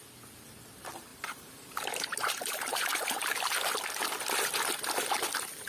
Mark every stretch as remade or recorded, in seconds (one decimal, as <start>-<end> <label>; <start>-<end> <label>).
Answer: 0.0-1.1 recorded; 1.1-2.8 remade; 2.8-5.7 recorded